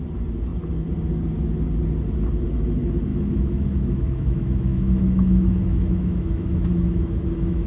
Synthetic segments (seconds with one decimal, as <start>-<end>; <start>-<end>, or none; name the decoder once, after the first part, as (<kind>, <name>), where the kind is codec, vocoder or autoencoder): 3.1-7.7 (autoencoder, DAC-VAE)